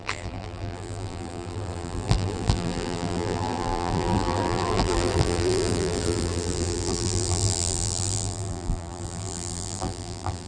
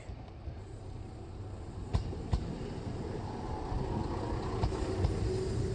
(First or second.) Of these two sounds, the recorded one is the second